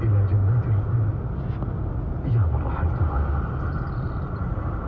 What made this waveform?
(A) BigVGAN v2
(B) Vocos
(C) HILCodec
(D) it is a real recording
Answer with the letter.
D